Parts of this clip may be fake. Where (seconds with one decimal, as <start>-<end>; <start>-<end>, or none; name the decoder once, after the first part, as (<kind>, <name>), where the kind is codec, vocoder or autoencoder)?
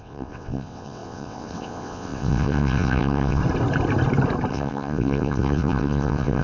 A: 0.0-3.4 (vocoder, WaveNeXt); 4.5-6.4